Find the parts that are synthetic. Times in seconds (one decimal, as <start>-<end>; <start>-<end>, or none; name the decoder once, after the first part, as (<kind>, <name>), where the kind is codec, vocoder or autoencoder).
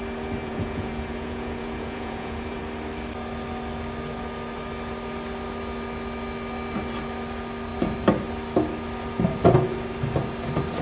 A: 0.4-2.6 (vocoder, Vocos)